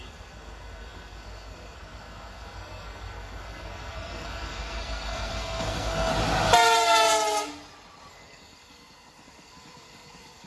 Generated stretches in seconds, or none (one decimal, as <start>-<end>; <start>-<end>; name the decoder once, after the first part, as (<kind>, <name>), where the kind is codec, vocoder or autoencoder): 0.0-6.1 (codec, SNAC); 8.1-10.5